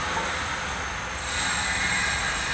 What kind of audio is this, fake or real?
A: real